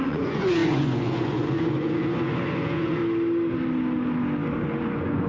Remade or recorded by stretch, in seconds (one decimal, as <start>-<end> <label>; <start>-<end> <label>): 0.0-3.0 remade; 3.0-4.8 recorded; 4.8-5.3 remade